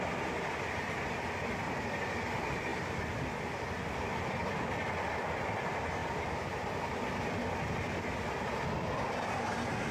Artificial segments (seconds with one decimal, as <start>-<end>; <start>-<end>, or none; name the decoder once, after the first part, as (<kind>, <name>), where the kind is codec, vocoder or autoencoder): none